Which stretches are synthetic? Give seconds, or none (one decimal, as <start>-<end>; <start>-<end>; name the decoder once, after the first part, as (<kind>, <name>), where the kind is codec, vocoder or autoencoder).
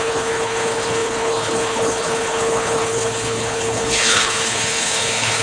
0.0-5.4 (codec, HILCodec)